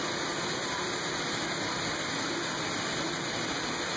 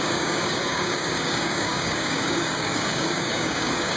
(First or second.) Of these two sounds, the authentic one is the first